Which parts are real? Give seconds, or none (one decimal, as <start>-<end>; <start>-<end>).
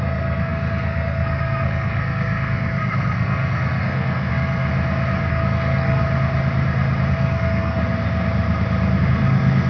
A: 4.7-5.3; 6.0-7.1; 7.8-9.0